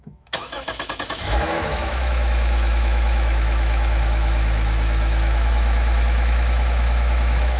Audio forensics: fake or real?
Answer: fake